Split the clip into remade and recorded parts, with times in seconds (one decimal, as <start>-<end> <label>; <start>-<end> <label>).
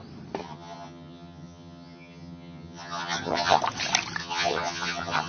0.0-0.4 recorded; 0.4-3.6 remade; 3.6-4.2 recorded; 4.2-5.3 remade